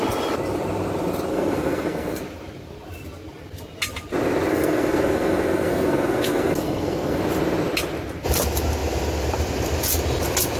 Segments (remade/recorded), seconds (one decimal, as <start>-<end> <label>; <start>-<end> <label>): 0.0-1.3 recorded; 1.3-2.2 remade; 2.2-4.5 recorded; 4.5-7.2 remade; 7.2-10.6 recorded